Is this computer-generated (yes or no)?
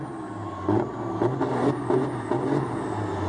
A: no